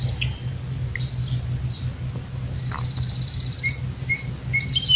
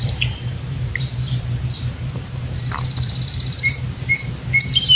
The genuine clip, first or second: first